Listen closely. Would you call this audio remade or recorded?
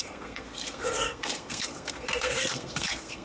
remade